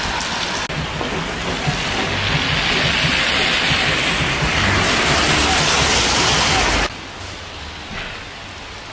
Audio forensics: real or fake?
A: real